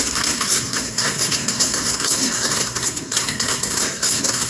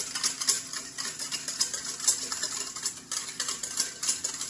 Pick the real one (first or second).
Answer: second